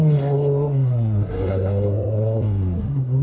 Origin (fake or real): fake